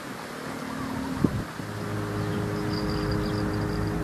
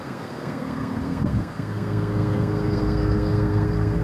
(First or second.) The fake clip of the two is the second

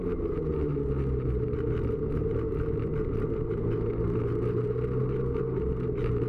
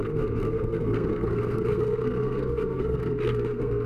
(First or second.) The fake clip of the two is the second